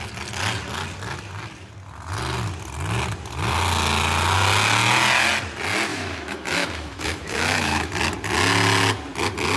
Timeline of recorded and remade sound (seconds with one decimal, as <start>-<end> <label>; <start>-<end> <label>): 0.0-5.9 recorded; 5.9-7.9 remade; 7.9-9.6 recorded